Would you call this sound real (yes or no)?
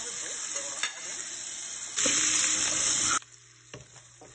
yes